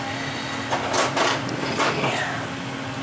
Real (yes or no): yes